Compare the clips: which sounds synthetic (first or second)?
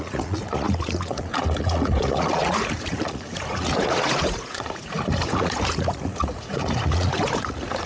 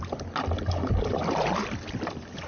first